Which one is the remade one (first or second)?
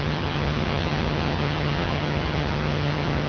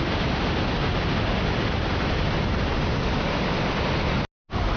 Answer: first